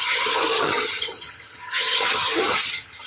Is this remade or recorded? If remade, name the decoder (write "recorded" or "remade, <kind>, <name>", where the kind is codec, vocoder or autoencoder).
remade, vocoder, HiFi-GAN